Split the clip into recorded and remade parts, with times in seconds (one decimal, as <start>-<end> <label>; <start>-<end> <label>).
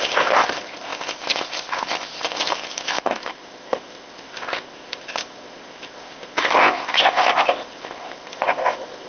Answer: 0.0-9.1 remade